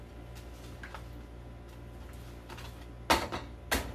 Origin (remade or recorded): recorded